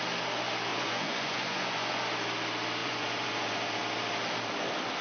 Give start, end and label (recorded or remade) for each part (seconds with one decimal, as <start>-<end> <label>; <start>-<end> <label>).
0.0-0.7 recorded; 0.7-2.0 remade; 2.0-2.8 recorded; 2.8-3.8 remade; 3.8-5.0 recorded